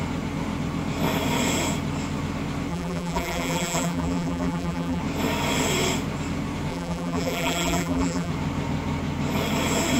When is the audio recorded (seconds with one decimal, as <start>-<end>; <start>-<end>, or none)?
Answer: 0.0-2.7; 5.0-6.7; 8.3-10.0